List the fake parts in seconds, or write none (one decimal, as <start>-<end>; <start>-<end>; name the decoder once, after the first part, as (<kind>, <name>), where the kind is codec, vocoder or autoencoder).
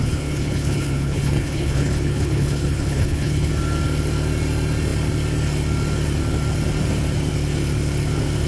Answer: 0.0-3.5 (codec, HILCodec)